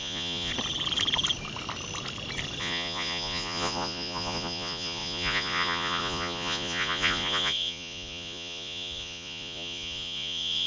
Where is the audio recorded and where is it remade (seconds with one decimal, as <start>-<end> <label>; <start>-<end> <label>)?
0.0-0.5 remade; 0.5-2.6 recorded; 2.6-10.7 remade